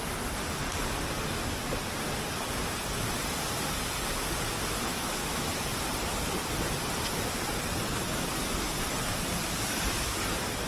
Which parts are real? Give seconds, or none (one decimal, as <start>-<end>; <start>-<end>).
0.0-4.9; 5.5-10.7